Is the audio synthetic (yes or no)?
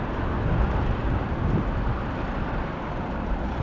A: no